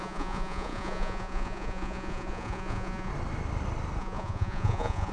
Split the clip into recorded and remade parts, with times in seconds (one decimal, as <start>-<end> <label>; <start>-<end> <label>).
0.0-3.1 remade; 3.1-4.0 recorded; 4.0-5.1 remade